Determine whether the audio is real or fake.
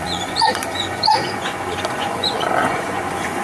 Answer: fake